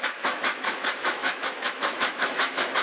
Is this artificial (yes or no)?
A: yes